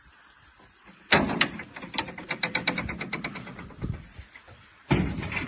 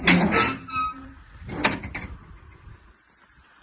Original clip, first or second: second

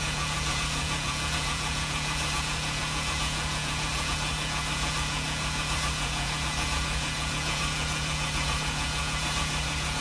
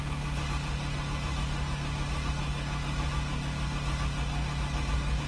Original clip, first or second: second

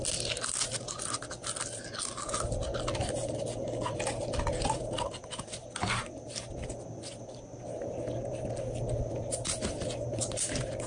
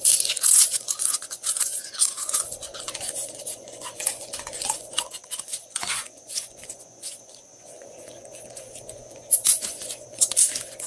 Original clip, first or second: first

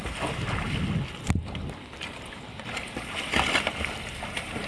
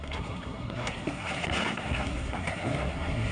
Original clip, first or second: first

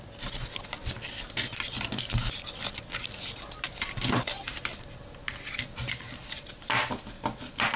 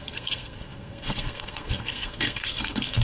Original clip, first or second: first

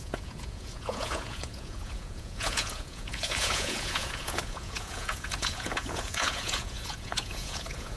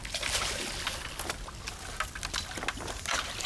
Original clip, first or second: second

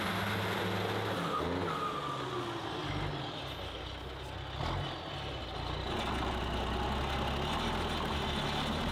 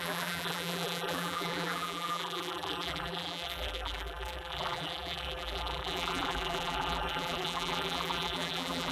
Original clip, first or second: first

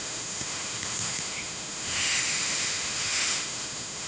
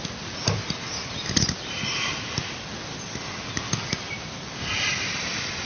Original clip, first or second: second